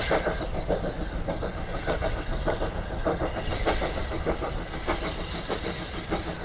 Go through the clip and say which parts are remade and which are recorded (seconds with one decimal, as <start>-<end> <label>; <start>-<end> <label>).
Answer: 0.0-1.7 recorded; 1.7-2.6 remade; 2.6-6.4 recorded